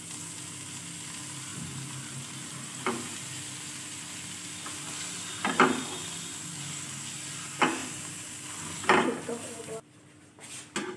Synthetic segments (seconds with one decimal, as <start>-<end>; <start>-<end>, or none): none